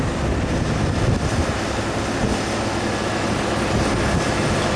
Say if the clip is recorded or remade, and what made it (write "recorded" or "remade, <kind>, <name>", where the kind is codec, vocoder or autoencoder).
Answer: recorded